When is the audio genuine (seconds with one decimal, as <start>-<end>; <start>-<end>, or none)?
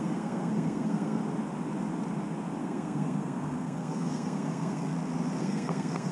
1.2-2.6; 4.9-5.4